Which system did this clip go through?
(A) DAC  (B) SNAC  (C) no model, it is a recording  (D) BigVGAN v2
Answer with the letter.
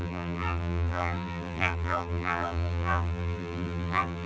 D